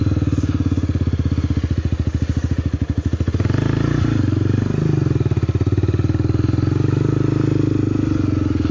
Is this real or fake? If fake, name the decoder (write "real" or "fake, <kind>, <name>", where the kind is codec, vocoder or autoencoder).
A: real